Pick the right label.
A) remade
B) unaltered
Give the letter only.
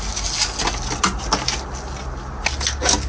B